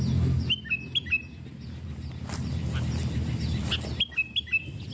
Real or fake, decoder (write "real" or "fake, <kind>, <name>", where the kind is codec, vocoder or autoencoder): real